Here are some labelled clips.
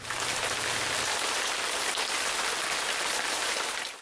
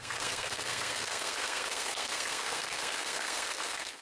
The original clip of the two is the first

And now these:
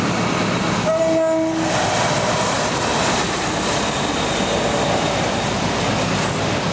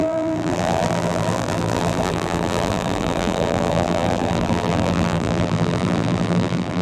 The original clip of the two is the first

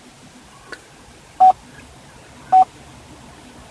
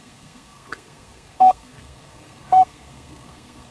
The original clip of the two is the first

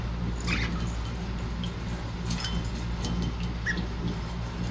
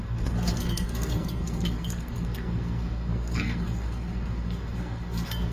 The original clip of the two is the first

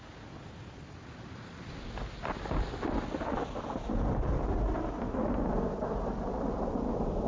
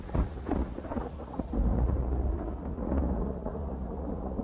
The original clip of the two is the first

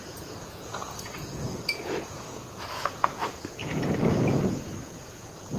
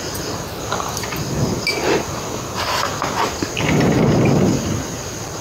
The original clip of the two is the second